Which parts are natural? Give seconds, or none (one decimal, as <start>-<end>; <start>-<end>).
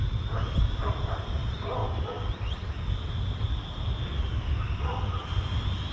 0.0-5.9